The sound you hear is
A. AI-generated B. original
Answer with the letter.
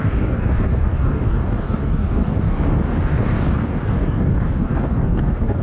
A